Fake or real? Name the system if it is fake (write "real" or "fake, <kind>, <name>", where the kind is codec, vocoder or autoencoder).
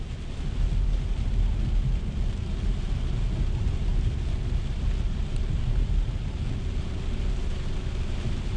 real